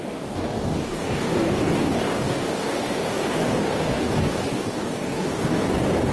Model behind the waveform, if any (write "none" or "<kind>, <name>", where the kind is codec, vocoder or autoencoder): codec, DAC